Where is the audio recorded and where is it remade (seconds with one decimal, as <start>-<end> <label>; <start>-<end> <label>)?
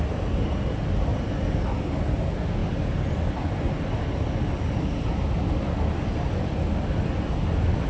0.0-7.9 recorded